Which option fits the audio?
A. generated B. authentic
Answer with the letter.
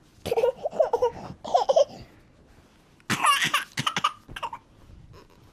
B